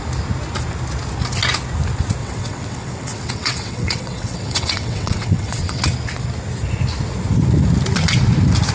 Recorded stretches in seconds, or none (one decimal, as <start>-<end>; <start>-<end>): 0.0-2.2; 5.9-8.7